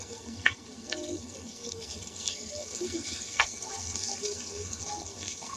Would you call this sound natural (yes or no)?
no